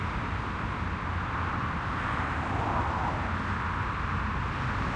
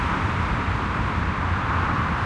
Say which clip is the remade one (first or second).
second